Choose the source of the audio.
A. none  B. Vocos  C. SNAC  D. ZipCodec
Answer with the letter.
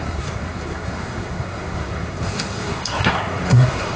C